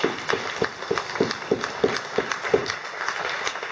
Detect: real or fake real